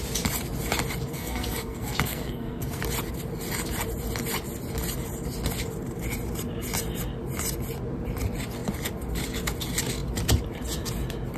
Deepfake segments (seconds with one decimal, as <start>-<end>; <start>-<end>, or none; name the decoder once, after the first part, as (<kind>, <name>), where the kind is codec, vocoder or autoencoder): 1.1-2.8 (codec, SNAC)